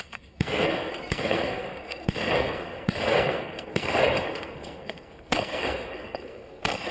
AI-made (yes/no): yes